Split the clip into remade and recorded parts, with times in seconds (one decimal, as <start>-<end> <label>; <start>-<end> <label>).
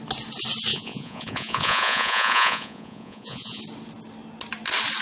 0.0-0.7 recorded; 0.7-3.6 remade; 3.6-5.0 recorded